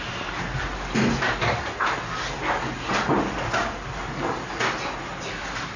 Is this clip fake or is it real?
real